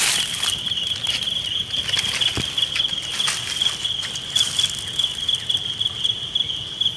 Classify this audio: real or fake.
real